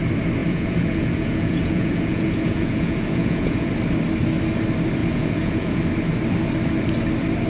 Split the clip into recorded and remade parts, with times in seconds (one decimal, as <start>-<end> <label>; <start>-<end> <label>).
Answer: 0.0-0.4 recorded; 0.4-3.7 remade; 3.7-5.0 recorded; 5.0-5.8 remade; 5.8-7.5 recorded